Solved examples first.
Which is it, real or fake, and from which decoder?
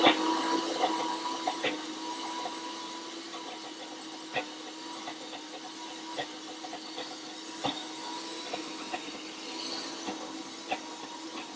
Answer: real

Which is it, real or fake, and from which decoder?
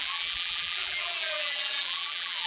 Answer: fake, vocoder, BigVGAN v2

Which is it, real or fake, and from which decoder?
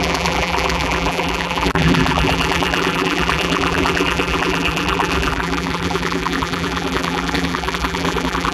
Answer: fake, vocoder, BigVGAN v2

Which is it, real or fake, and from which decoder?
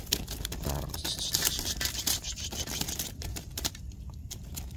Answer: fake, vocoder, BigVGAN v2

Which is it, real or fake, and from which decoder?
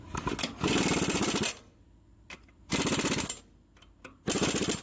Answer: real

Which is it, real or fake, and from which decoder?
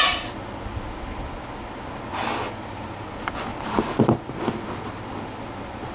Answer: real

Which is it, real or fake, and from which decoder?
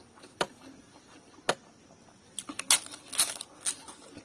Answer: real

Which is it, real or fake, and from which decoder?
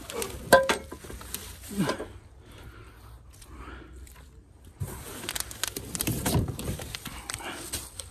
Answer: real